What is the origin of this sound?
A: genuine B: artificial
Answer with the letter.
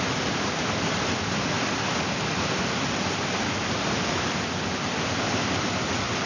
A